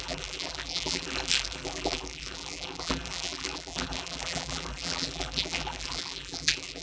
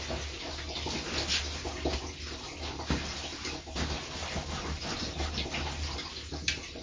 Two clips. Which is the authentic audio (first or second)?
second